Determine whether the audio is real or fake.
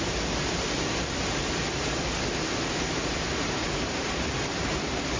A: real